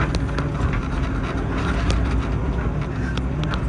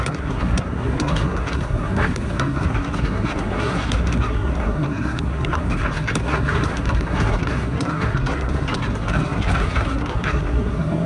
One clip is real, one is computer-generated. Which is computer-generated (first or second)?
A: second